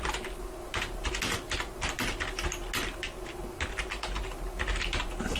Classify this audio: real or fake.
real